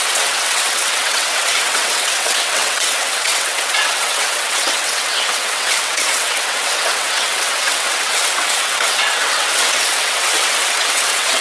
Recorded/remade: remade